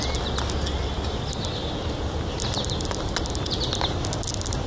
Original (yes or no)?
yes